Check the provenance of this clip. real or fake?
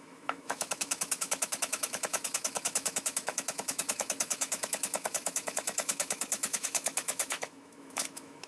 fake